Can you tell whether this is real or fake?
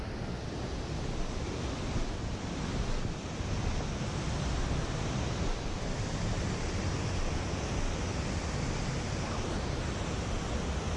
real